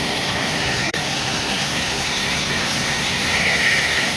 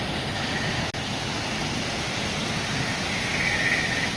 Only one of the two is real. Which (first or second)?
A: second